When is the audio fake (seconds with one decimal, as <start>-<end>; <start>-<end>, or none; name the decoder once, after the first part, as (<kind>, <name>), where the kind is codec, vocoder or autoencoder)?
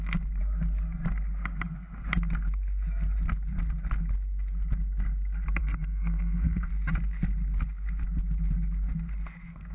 5.6-6.7 (codec, SNAC)